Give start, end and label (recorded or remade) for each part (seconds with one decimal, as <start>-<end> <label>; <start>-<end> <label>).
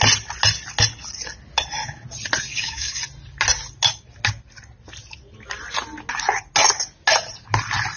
0.0-2.5 recorded; 2.5-3.0 remade; 3.0-8.0 recorded